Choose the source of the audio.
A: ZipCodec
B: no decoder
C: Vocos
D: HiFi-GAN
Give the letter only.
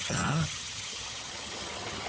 D